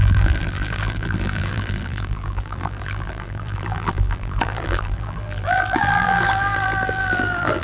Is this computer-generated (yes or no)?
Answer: yes